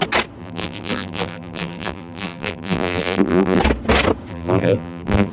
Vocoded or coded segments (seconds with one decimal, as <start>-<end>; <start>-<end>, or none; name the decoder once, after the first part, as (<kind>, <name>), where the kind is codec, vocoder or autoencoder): 0.4-3.6 (vocoder, BigVGAN v2); 4.3-5.3